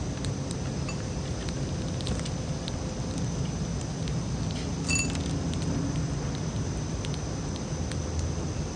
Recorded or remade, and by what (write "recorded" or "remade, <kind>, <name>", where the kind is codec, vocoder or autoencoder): recorded